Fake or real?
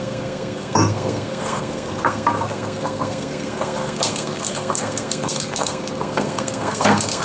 fake